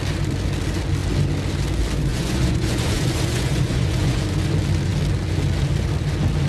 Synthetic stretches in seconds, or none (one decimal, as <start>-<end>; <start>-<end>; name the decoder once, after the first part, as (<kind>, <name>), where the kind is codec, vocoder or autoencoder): 2.1-4.2 (vocoder, Vocos)